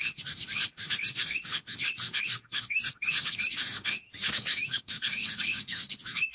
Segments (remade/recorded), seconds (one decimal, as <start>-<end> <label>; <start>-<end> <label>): 0.0-6.3 remade